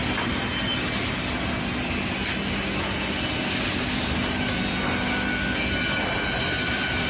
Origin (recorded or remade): recorded